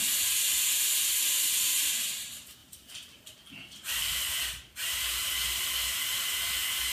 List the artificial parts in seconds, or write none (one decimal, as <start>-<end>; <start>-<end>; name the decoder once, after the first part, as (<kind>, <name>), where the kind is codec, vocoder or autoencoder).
none